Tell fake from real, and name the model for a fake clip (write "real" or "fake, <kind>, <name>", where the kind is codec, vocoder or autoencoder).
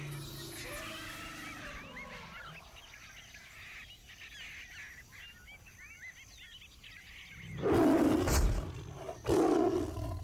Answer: real